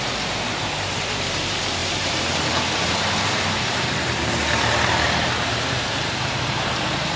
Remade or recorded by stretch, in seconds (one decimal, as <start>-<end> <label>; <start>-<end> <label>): 0.0-7.2 remade